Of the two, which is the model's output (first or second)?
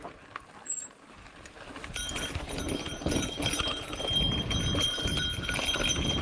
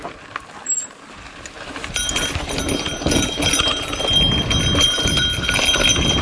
first